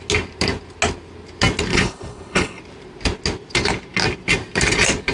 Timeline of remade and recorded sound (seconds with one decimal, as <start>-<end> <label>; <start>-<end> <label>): 0.0-1.7 recorded; 1.7-2.6 remade; 2.6-5.1 recorded